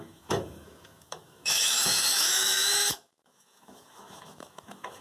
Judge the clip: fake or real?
fake